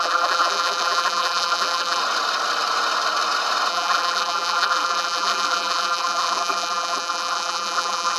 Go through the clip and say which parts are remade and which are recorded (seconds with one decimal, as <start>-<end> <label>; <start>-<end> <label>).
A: 0.0-2.0 remade; 2.0-3.7 recorded; 3.7-8.2 remade